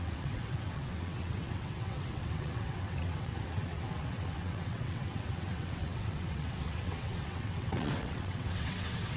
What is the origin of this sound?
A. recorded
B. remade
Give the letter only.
B